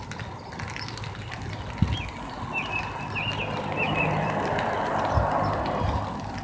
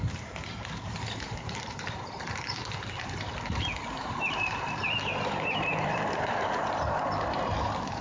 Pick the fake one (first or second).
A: second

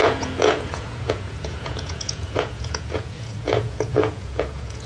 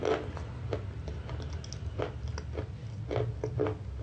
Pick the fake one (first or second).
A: first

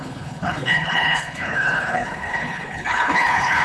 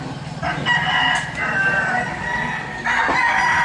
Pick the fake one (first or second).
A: first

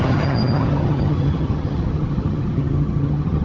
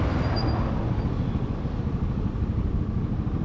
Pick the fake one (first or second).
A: first